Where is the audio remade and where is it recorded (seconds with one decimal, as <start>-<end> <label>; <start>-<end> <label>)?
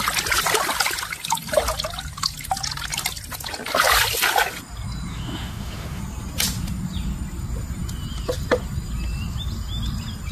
0.0-5.1 recorded; 5.1-6.0 remade; 6.0-10.3 recorded